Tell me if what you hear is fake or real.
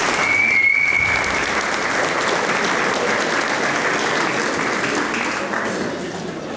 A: real